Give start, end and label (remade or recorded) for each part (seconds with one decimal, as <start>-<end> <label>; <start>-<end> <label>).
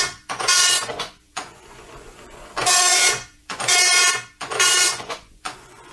0.0-5.9 remade